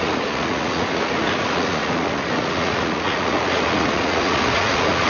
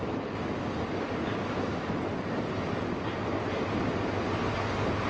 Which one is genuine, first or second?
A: second